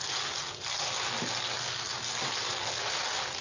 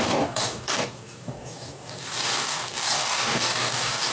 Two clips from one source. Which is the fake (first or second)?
second